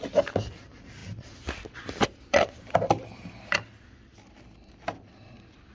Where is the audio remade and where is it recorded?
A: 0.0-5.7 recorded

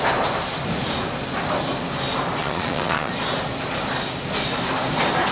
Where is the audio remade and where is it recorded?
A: 0.0-2.4 recorded; 2.4-3.1 remade; 3.1-5.3 recorded